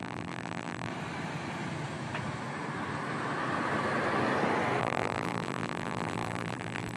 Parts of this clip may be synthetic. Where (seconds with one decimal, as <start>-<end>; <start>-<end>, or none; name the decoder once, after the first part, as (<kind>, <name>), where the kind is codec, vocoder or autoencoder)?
0.0-0.9 (vocoder, BigVGAN v2); 4.8-7.0